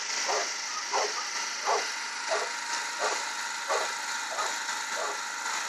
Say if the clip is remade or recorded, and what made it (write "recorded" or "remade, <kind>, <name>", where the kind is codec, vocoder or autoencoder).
recorded